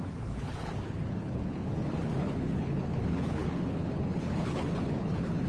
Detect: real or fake fake